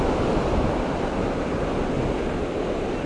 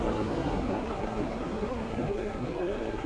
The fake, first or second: second